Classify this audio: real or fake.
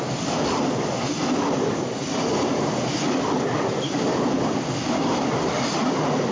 real